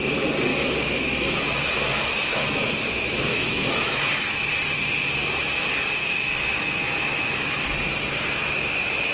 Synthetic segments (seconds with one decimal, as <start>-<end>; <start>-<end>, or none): 0.5-4.5; 6.0-7.7